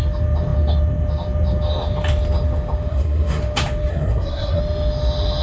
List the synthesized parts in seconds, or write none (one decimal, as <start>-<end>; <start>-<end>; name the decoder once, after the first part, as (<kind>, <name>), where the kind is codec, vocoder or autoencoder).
2.9-3.4 (codec, SNAC); 3.9-4.6

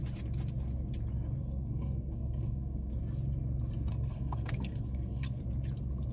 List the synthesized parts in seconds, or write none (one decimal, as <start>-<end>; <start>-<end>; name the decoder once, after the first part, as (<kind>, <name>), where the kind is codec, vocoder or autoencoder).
1.4-2.9 (codec, SNAC); 3.9-5.4

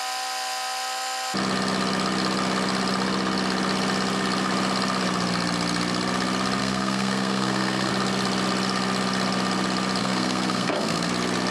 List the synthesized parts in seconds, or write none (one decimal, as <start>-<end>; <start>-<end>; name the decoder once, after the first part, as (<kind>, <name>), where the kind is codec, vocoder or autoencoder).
6.6-7.9 (codec, SNAC); 10.0-11.1

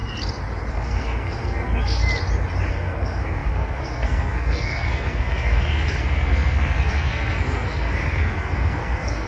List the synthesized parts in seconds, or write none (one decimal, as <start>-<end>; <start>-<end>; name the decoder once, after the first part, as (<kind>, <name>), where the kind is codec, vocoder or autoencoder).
0.7-2.0 (codec, SNAC); 2.7-9.3

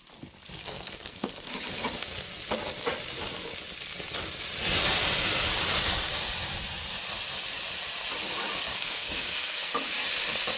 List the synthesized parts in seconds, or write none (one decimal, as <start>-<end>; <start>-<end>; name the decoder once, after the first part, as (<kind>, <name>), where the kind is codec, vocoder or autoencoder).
0.6-1.3 (codec, SNAC); 8.7-9.7

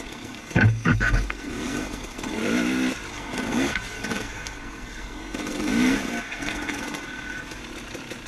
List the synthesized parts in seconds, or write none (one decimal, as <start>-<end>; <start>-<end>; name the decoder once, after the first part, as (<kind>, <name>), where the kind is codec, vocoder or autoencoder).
0.0-2.4 (codec, SNAC); 3.1-7.6

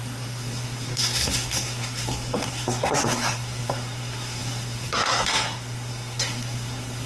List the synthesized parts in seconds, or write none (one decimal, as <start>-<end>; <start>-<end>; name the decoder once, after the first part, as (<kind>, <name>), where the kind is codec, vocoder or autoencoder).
0.0-7.1 (codec, SNAC)